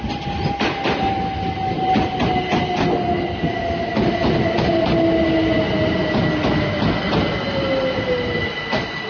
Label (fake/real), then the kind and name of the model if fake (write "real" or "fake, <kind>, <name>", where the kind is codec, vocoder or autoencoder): real